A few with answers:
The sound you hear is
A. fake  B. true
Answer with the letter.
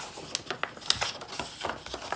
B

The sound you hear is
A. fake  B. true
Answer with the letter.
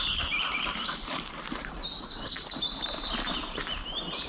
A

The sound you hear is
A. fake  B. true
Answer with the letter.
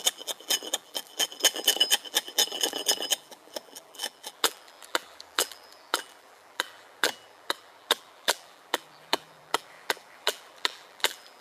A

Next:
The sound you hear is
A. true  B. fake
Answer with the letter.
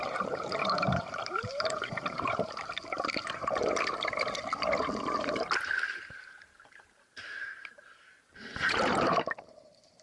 B